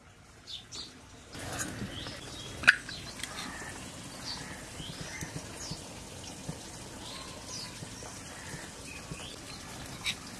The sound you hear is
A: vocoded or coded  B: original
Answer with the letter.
B